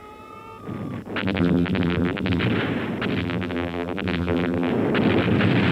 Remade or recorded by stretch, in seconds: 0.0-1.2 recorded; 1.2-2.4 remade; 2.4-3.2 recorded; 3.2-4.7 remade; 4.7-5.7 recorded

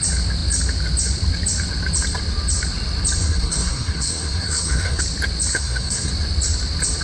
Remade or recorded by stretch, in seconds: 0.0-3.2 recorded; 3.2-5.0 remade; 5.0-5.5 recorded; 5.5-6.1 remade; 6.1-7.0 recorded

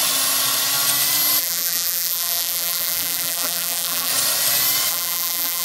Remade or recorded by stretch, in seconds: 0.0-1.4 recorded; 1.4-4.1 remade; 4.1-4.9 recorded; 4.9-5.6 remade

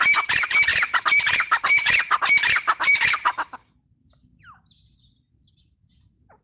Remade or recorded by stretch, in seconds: 0.0-0.7 recorded; 0.7-2.2 remade; 2.2-3.3 recorded; 3.3-4.0 remade; 4.0-6.4 recorded

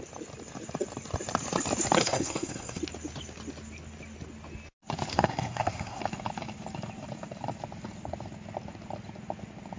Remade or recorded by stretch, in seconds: 0.0-2.0 recorded; 2.0-2.8 remade; 2.8-5.1 recorded; 5.1-6.0 remade; 6.0-9.8 recorded

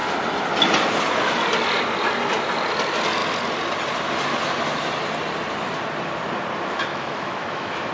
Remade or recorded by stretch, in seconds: 0.0-6.9 recorded; 6.9-7.9 remade

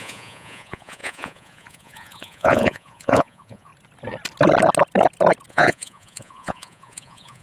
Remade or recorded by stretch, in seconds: 0.0-3.7 remade; 3.7-5.5 recorded; 5.5-7.4 remade

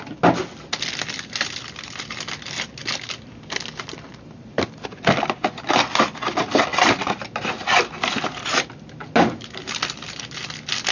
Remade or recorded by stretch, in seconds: 0.0-10.9 recorded